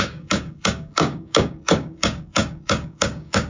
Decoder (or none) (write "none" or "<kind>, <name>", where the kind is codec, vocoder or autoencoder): codec, DAC